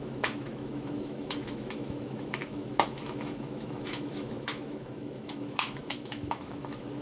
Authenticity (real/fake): fake